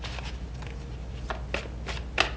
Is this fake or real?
real